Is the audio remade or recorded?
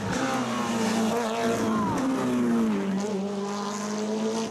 recorded